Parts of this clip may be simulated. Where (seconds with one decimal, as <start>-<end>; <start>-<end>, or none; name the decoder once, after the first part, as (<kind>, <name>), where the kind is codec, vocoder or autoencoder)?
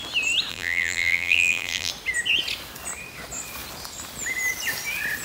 0.5-1.9 (vocoder, BigVGAN v2)